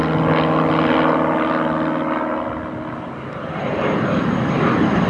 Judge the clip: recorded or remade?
recorded